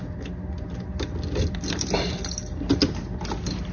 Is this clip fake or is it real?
real